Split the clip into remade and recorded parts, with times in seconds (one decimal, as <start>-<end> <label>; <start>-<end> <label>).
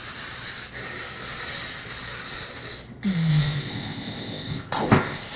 0.0-3.3 recorded; 3.3-5.4 remade